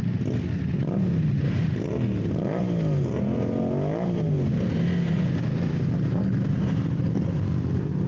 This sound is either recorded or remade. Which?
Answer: recorded